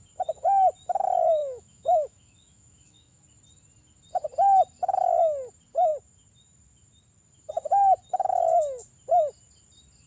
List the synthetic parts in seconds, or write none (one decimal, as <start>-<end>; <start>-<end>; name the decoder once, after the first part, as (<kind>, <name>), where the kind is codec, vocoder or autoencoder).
1.4-3.2 (autoencoder, DAC-VAE)